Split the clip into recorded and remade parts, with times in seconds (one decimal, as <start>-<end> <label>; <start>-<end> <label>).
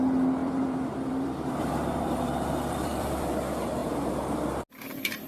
0.0-0.4 recorded; 0.4-3.3 remade; 3.3-5.3 recorded